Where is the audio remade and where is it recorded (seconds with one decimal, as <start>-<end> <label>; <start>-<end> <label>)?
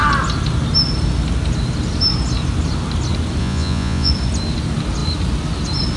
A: 0.0-3.4 recorded; 3.4-4.1 remade; 4.1-6.0 recorded